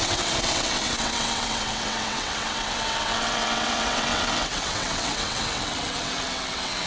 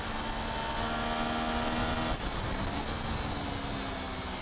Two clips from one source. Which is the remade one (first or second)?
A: first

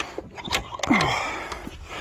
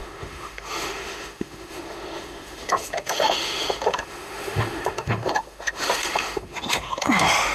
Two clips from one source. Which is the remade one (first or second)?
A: second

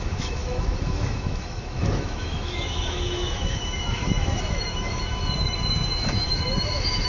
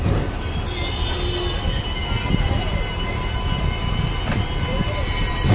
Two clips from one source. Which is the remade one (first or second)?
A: first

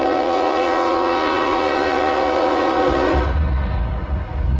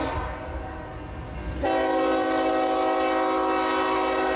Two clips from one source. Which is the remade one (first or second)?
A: first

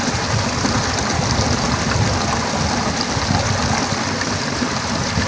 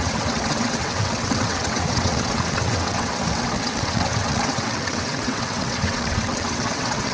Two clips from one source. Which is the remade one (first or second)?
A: second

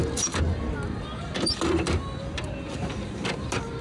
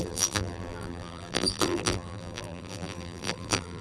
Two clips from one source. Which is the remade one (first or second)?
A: second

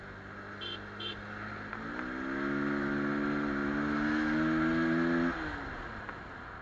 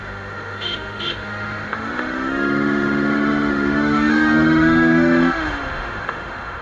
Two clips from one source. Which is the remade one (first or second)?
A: second